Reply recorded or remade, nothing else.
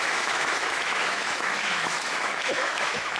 remade